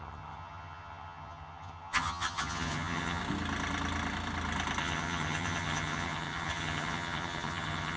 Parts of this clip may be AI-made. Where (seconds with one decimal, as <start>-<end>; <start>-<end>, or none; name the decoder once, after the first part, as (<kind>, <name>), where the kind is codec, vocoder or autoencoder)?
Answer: 0.0-3.2 (vocoder, HiFi-GAN); 4.8-8.0